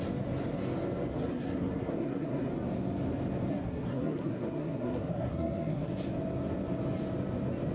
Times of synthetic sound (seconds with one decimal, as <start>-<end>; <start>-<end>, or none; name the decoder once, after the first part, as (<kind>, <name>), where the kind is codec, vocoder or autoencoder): 1.1-2.5 (codec, SNAC); 3.5-5.9